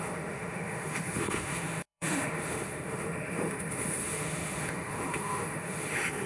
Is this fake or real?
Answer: fake